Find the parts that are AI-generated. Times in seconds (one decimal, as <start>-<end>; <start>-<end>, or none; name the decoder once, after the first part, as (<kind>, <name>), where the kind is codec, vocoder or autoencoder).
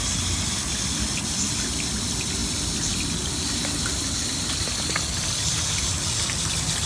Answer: none